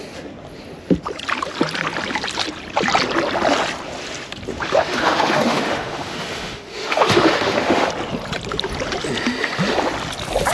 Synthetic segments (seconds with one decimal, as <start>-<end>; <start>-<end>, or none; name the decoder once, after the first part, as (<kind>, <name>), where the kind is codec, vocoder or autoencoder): 4.5-7.9 (autoencoder, DAC-VAE)